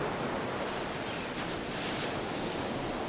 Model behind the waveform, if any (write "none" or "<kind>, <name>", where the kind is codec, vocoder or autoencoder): none